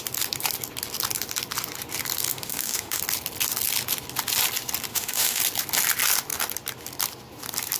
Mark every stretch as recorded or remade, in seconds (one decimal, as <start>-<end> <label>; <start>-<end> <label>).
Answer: 0.0-2.3 recorded; 2.3-3.0 remade; 3.0-4.9 recorded; 4.9-5.4 remade; 5.4-7.8 recorded